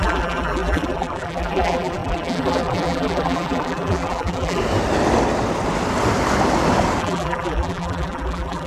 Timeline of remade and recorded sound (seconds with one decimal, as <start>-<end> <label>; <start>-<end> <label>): 0.0-4.6 remade; 4.6-7.0 recorded; 7.0-8.7 remade